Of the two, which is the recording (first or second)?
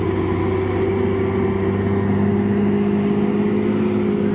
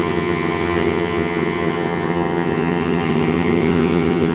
first